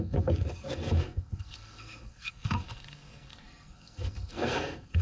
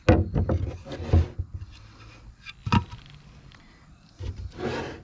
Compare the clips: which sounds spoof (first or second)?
first